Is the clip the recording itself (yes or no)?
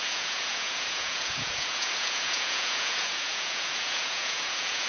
no